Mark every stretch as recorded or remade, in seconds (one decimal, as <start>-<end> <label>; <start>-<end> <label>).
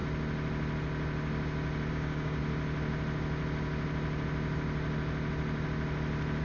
0.0-1.9 recorded; 1.9-2.4 remade; 2.4-6.4 recorded